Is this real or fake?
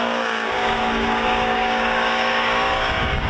fake